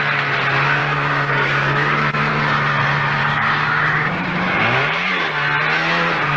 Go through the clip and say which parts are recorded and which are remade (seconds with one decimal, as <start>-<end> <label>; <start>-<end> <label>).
0.0-0.8 recorded; 0.8-2.3 remade; 2.3-3.2 recorded; 3.2-5.1 remade; 5.1-6.4 recorded